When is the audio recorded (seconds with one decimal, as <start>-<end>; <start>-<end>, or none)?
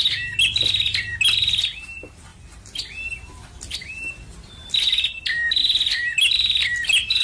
0.0-7.2